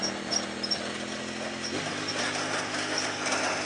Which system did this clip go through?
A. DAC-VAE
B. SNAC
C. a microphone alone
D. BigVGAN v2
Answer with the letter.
C